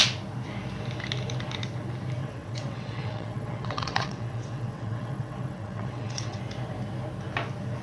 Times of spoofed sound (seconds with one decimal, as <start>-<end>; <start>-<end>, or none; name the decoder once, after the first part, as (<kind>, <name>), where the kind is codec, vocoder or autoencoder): 2.2-6.4 (vocoder, WaveNeXt)